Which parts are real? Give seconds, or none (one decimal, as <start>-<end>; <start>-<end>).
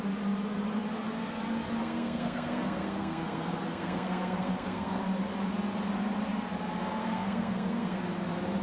0.0-1.8; 5.0-7.0; 8.0-8.6